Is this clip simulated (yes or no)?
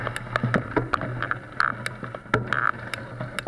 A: no